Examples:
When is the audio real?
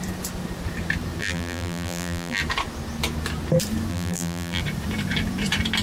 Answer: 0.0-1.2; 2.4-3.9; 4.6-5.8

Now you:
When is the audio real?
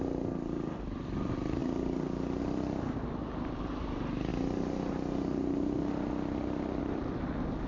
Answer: 0.0-7.7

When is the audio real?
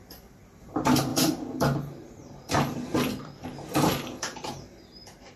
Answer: none